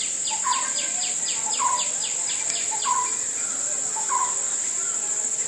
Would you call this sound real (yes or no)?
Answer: yes